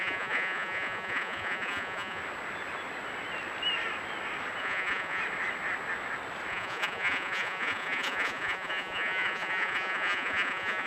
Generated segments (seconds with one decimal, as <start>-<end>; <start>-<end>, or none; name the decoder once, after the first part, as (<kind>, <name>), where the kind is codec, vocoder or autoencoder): 0.0-2.2 (vocoder, Vocos); 4.6-5.2; 6.5-10.9